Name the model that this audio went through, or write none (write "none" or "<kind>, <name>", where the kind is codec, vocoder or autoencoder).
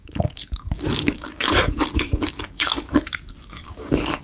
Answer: codec, DAC